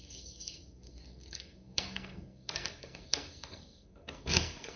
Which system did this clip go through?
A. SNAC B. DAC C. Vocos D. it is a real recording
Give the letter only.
A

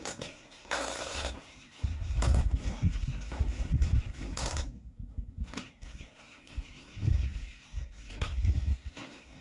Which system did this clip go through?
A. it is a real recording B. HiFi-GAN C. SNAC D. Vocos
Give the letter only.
C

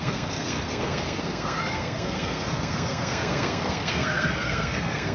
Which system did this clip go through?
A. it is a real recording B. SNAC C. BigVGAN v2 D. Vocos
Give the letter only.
B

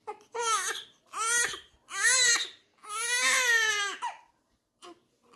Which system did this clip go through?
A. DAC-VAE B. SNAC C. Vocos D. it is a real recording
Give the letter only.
D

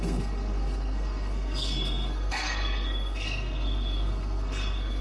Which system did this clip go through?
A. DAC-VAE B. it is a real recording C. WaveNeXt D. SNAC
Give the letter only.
D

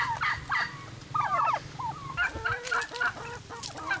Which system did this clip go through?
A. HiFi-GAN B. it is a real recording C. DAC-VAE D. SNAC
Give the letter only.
B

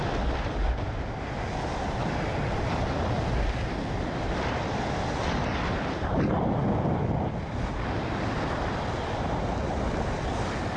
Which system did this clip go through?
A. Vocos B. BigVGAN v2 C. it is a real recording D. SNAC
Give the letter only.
C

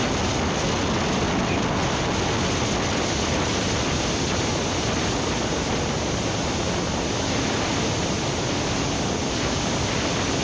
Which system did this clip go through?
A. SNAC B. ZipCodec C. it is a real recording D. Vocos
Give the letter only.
C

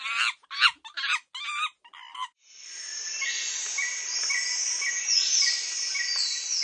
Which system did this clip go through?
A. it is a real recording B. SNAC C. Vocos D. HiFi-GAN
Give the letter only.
A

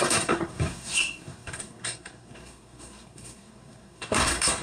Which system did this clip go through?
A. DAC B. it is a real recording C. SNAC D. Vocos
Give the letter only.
C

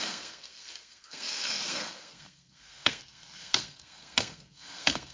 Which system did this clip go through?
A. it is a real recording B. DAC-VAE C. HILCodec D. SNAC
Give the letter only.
D